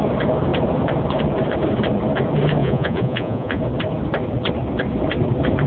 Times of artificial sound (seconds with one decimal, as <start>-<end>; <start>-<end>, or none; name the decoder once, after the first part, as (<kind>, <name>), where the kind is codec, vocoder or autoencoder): 2.6-3.6 (vocoder, Vocos)